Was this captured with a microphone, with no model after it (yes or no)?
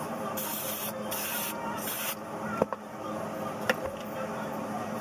yes